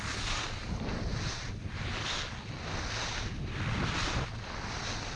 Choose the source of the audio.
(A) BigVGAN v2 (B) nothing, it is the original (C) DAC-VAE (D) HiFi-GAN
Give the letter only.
B